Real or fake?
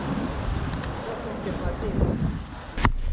real